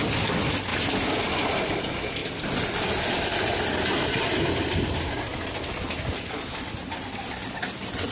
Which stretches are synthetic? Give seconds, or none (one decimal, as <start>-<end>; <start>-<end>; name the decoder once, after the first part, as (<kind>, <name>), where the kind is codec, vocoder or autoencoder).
none